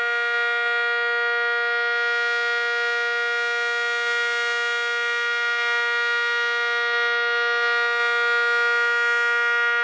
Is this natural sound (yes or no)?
yes